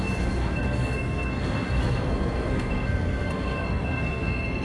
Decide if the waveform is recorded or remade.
remade